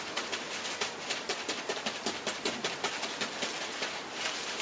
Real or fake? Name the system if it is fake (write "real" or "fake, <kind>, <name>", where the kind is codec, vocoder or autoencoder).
real